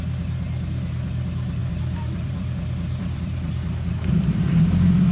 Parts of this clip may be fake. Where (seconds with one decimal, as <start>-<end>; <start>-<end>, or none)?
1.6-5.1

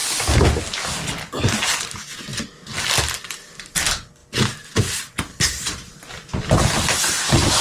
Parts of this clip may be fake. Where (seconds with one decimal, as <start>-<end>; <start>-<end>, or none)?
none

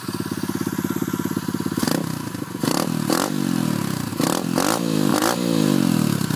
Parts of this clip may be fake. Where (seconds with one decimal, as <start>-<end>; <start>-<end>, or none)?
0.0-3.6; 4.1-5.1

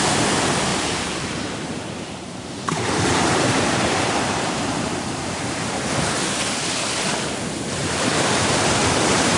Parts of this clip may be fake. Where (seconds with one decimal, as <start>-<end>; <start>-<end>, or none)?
0.7-5.4; 7.8-9.4

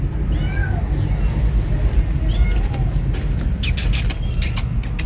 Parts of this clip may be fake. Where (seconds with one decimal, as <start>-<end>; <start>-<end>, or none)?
none

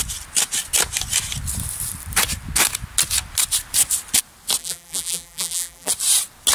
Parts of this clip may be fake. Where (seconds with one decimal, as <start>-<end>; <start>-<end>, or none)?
4.6-5.9

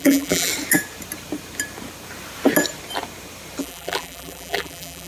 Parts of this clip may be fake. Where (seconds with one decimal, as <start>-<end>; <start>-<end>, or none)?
0.0-0.5; 3.6-5.1